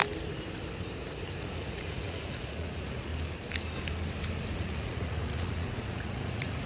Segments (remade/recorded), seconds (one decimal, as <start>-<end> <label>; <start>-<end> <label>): 0.0-1.4 recorded; 1.4-3.1 remade; 3.1-4.5 recorded; 4.5-6.7 remade

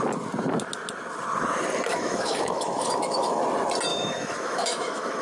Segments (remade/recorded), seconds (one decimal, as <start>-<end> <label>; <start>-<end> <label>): 0.0-1.9 recorded; 1.9-3.4 remade; 3.4-3.9 recorded; 3.9-5.2 remade